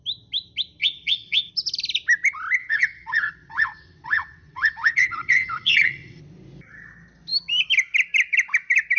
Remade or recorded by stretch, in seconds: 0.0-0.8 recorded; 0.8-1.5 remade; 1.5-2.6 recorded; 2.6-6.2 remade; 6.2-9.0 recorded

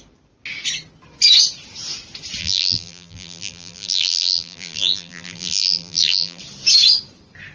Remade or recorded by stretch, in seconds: 0.0-2.4 recorded; 2.4-6.4 remade; 6.4-7.5 recorded